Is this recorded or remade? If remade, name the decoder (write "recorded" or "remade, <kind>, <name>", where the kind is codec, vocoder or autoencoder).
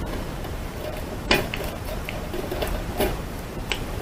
remade, vocoder, BigVGAN v2